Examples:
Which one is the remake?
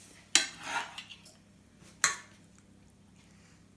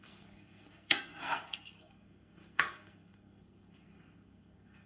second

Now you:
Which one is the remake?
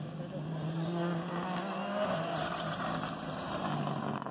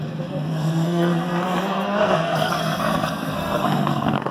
second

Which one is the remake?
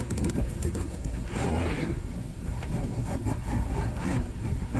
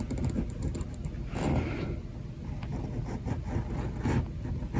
first